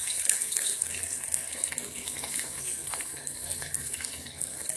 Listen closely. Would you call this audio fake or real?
fake